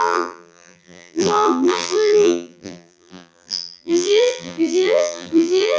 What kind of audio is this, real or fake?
fake